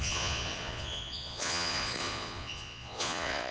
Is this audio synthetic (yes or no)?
yes